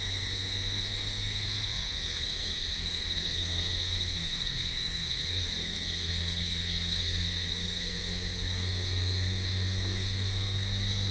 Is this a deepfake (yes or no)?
yes